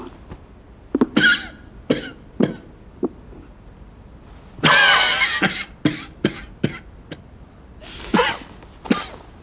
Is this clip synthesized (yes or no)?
no